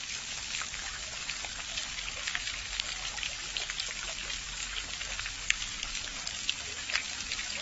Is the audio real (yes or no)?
no